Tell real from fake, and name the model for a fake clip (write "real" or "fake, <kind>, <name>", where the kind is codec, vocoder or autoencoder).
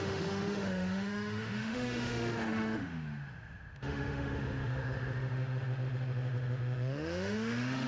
fake, autoencoder, DAC-VAE